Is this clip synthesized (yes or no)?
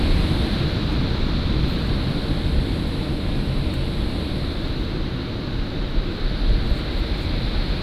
no